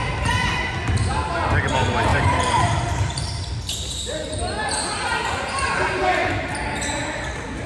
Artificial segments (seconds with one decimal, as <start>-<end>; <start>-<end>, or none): 2.1-3.5